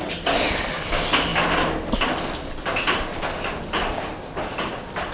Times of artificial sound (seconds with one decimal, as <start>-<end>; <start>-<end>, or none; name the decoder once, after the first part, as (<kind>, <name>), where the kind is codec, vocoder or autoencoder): none